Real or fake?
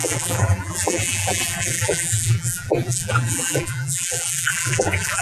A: fake